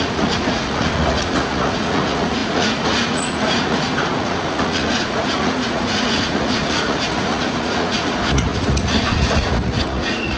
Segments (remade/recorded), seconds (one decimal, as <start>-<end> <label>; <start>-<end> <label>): 0.0-10.4 remade